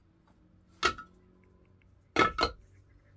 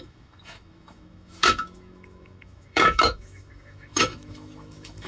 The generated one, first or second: second